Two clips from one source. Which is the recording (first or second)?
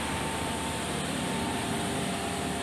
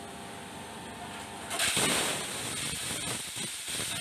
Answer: second